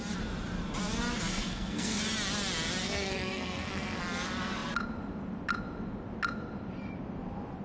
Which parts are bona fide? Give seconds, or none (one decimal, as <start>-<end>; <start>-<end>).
0.0-1.3; 2.0-2.8; 4.0-7.6